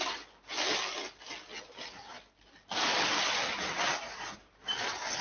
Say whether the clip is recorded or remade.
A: recorded